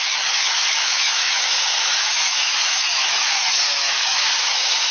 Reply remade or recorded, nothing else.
remade